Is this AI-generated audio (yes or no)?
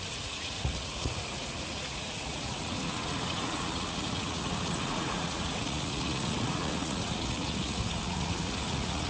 yes